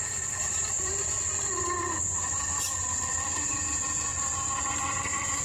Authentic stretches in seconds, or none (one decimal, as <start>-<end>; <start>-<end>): none